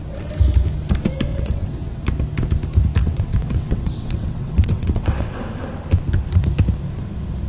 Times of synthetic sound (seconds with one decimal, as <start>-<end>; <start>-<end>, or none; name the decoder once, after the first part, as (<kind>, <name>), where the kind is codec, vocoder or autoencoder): 1.3-2.0 (vocoder, WaveNeXt); 3.0-5.4